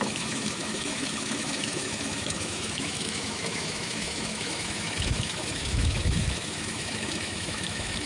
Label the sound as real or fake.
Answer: fake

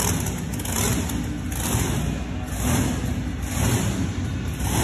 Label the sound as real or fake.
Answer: real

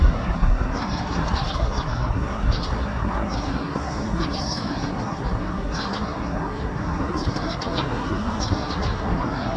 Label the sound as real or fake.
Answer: fake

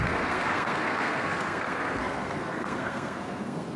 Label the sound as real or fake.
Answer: fake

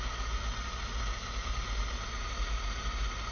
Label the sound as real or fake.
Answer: real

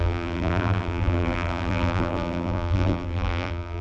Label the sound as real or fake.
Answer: fake